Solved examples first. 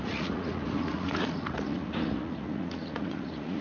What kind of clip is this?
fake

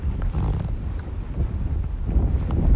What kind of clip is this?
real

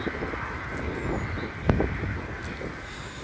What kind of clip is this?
real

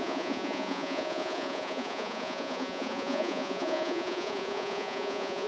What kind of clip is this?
fake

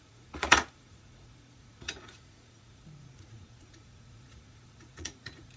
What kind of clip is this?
fake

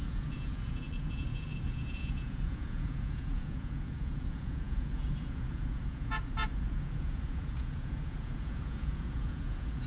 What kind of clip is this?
fake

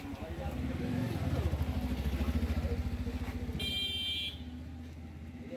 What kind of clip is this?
real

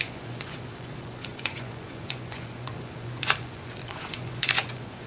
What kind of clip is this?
fake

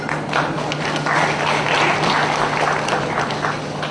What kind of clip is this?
real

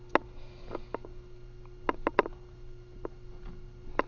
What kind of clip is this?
real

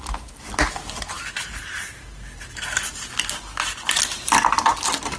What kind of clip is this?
real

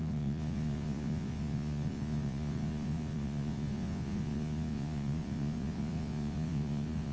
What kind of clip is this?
fake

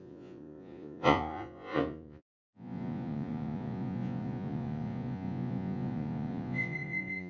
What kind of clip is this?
fake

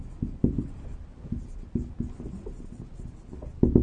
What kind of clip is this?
real